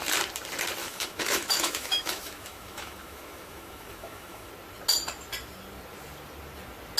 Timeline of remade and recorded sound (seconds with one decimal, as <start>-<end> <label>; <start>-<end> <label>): 0.0-0.8 recorded; 0.8-4.5 remade; 4.5-7.0 recorded